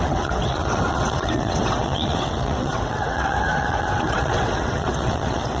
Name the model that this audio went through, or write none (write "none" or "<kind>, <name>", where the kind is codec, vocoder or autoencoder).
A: vocoder, WaveNeXt